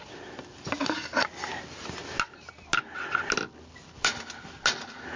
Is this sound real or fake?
real